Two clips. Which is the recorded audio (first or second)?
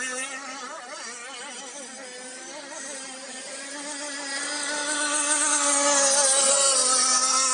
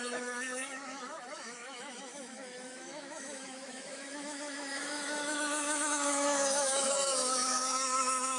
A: first